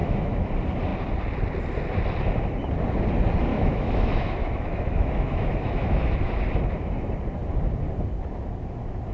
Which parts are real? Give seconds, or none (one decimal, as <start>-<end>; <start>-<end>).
0.5-3.5; 6.4-9.1